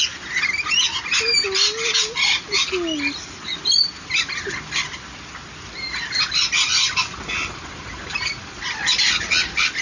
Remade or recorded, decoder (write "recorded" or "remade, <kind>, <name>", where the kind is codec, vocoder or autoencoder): recorded